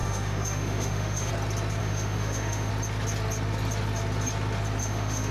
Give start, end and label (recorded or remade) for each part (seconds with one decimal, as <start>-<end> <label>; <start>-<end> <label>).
0.0-1.3 remade; 1.3-1.8 recorded; 1.8-2.7 remade; 2.7-4.8 recorded; 4.8-5.3 remade